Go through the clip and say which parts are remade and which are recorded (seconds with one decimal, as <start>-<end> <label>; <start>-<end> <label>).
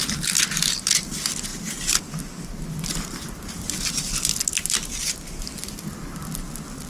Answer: 0.0-6.9 recorded